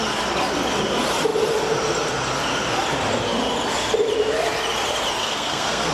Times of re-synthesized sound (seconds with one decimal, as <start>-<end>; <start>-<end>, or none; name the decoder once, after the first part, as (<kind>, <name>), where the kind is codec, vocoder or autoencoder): 5.2-5.9 (codec, SNAC)